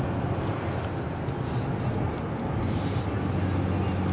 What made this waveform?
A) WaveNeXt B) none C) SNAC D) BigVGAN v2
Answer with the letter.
B